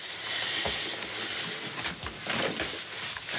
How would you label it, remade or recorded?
recorded